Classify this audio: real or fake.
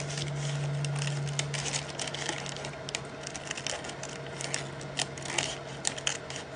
real